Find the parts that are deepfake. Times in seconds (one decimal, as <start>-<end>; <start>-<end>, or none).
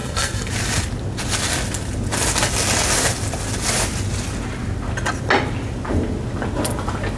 0.0-0.5